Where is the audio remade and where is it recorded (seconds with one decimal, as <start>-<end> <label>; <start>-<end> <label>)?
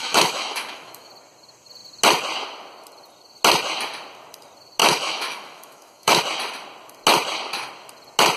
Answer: 0.0-1.1 remade; 1.1-4.8 recorded; 4.8-6.2 remade; 6.2-8.4 recorded